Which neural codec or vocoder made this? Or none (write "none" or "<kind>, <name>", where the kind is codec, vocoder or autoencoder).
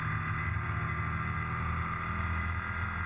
none